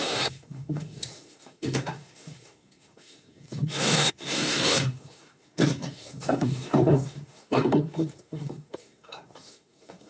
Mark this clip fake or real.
fake